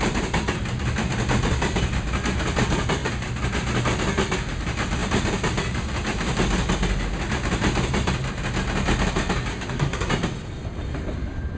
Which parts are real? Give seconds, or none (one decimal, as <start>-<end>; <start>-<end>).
0.0-9.5; 10.1-11.6